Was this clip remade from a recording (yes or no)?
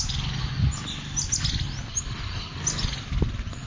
no